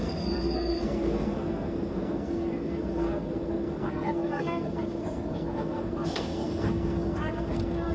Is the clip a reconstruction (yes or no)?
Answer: yes